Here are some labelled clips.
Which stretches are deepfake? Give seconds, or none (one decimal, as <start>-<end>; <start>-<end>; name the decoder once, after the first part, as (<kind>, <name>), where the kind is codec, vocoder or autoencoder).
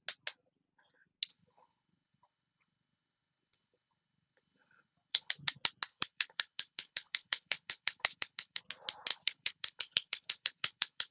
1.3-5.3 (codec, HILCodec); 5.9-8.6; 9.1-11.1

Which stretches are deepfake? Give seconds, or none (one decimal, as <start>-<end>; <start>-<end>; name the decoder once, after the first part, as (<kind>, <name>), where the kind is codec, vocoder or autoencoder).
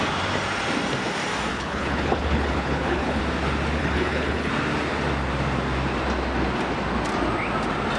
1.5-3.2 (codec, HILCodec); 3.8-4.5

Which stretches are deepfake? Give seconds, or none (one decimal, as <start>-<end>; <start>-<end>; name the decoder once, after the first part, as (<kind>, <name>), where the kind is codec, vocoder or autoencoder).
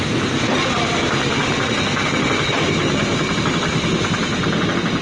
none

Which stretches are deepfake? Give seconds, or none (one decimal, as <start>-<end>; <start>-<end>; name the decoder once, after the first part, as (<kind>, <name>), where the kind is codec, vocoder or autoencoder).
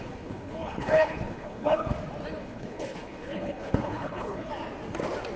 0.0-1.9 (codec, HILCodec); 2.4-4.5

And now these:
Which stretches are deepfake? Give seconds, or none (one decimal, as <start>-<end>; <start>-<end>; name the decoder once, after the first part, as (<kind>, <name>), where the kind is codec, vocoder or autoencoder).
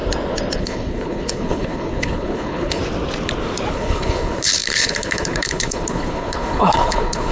0.6-2.8 (codec, HILCodec); 3.7-7.3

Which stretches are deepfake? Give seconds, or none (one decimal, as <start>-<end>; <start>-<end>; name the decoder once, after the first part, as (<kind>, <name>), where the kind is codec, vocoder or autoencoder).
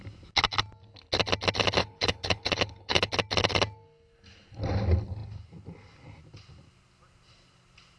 1.8-3.1 (codec, HILCodec)